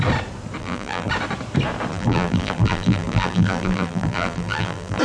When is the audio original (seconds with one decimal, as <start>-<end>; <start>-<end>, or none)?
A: 0.0-0.6; 1.1-1.9